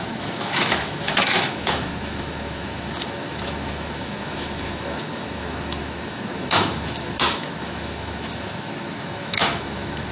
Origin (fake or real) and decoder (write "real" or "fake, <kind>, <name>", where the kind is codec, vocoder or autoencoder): fake, autoencoder, DAC-VAE